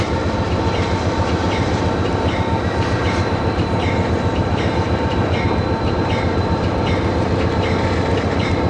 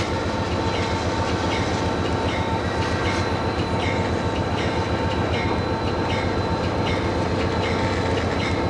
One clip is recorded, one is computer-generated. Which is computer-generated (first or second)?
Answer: first